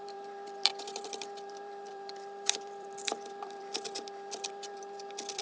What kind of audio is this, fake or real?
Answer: fake